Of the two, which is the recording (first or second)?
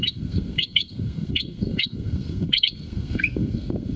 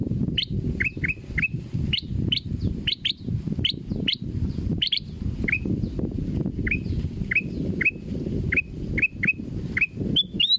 second